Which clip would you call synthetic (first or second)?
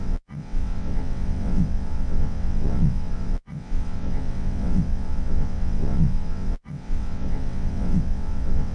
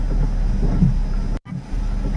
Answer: first